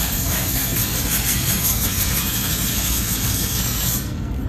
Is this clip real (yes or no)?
no